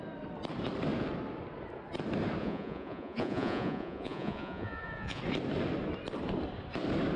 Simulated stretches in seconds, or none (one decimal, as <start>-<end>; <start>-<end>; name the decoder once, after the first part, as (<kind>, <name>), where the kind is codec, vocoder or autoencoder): 2.4-5.2 (vocoder, Vocos)

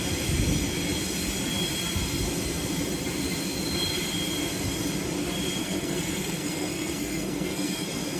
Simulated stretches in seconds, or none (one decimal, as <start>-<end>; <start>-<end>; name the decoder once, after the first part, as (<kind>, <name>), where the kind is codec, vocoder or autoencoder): 5.6-8.2 (codec, SNAC)

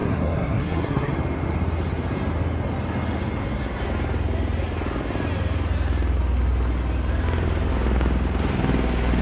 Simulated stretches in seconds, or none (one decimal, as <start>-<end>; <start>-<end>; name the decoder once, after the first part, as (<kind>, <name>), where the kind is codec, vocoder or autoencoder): 0.0-1.1 (codec, SNAC)

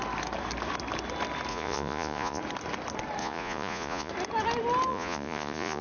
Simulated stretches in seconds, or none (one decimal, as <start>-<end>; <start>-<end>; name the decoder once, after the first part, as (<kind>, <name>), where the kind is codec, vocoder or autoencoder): 1.5-2.4 (vocoder, Vocos); 3.2-4.1; 4.9-5.8

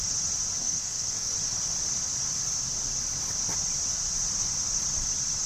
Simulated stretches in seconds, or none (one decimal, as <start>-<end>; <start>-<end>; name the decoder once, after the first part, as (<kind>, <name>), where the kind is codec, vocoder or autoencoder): 0.6-1.3 (codec, SNAC)

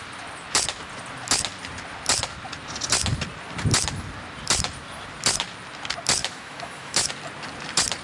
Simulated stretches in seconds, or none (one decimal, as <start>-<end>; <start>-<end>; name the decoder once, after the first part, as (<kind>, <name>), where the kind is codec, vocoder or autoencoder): 6.2-7.1 (autoencoder, DAC-VAE)